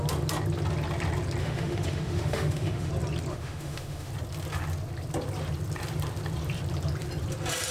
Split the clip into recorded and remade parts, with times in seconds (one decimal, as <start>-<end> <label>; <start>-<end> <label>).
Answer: 0.0-1.4 recorded; 1.4-2.9 remade; 2.9-3.3 recorded; 3.3-4.1 remade; 4.1-7.7 recorded